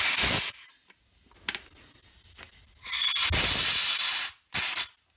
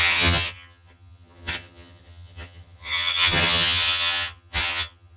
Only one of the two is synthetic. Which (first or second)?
second